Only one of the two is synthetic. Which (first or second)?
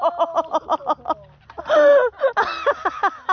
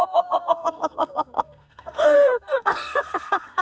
second